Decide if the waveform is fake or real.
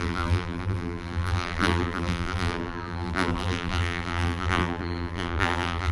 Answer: fake